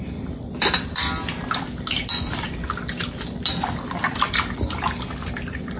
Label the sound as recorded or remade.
recorded